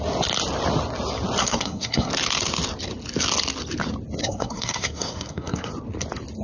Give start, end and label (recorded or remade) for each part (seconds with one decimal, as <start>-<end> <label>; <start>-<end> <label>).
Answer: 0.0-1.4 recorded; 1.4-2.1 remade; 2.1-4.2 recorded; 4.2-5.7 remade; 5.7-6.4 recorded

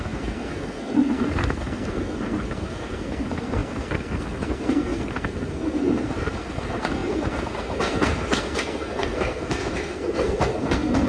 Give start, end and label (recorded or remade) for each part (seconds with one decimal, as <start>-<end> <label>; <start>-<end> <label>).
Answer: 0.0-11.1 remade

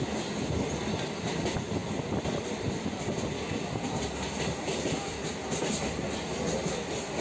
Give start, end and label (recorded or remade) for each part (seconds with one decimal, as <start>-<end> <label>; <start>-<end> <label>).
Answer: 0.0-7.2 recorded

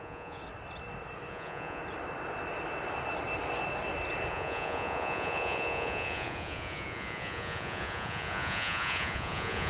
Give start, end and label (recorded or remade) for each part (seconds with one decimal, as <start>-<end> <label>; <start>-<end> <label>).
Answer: 0.0-0.4 remade; 0.4-1.3 recorded; 1.3-1.8 remade; 1.8-4.3 recorded; 4.3-9.7 remade

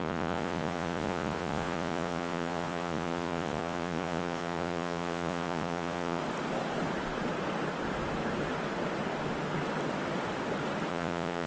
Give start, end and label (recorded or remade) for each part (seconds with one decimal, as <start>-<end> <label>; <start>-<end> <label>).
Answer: 0.0-6.2 remade; 6.2-10.9 recorded; 10.9-11.5 remade